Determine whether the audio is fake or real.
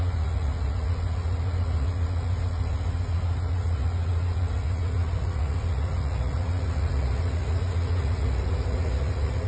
fake